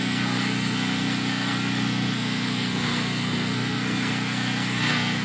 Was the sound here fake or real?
fake